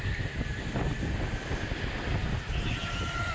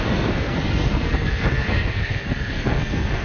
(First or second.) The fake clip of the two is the second